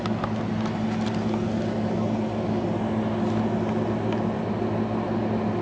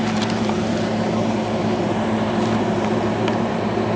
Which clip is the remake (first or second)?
second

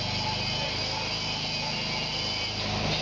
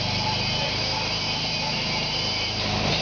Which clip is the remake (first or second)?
second